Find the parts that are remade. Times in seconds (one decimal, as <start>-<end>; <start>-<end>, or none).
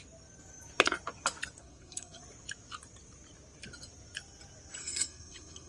1.6-2.2; 4.8-5.7